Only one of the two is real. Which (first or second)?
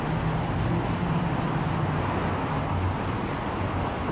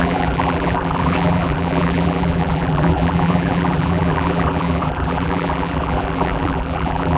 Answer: first